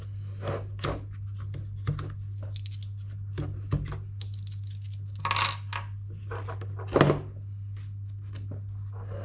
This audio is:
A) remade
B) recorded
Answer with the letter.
B